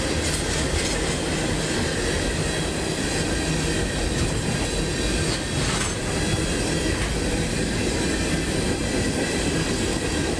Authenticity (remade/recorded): recorded